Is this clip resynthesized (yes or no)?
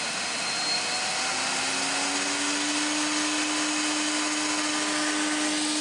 no